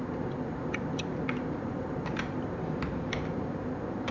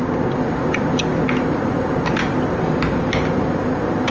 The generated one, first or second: first